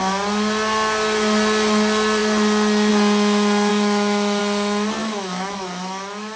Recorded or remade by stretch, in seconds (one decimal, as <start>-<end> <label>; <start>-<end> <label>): 0.0-3.7 recorded; 3.7-4.4 remade; 4.4-5.0 recorded; 5.0-6.4 remade